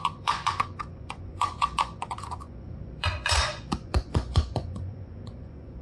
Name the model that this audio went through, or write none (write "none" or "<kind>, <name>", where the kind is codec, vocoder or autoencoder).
vocoder, Vocos